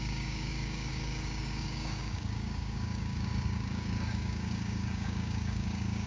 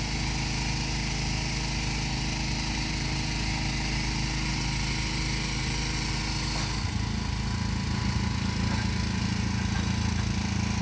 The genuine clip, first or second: second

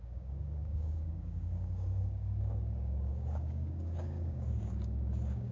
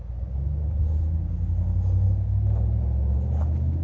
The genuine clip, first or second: second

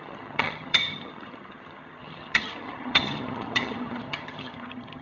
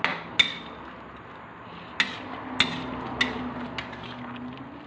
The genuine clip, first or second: second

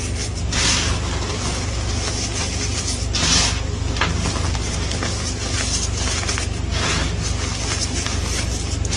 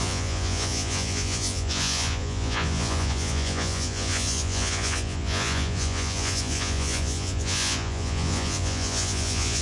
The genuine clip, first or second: first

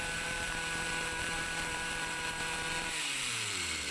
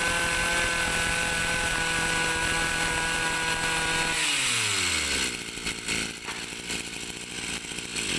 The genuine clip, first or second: second